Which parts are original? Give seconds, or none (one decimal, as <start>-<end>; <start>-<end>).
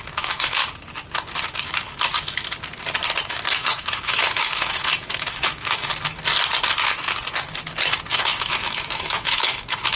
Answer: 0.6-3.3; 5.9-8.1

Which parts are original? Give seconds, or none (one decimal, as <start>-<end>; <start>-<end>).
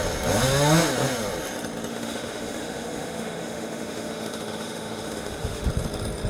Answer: 0.0-1.9; 5.7-6.3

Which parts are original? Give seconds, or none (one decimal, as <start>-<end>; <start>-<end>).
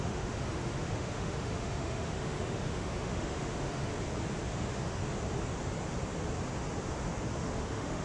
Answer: 3.9-4.5; 5.0-7.4